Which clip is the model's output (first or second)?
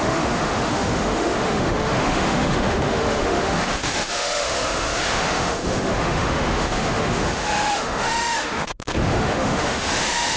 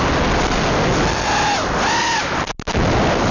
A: first